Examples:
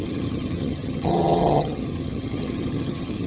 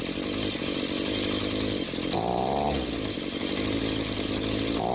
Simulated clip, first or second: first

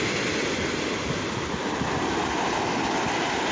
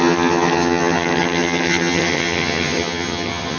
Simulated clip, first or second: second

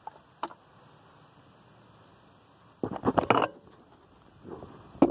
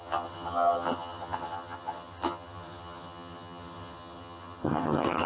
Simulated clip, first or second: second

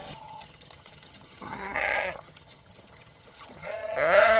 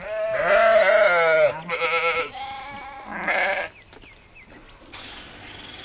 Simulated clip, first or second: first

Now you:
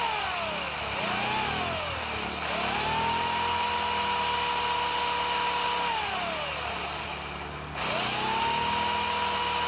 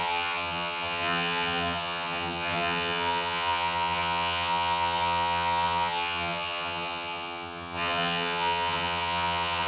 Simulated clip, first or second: second